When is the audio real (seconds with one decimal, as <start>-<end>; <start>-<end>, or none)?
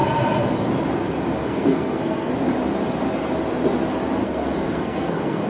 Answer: 0.0-1.4; 2.3-4.2